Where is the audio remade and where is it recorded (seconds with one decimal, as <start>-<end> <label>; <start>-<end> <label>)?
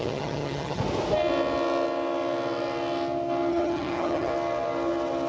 0.0-0.8 remade; 0.8-3.5 recorded; 3.5-4.3 remade; 4.3-5.3 recorded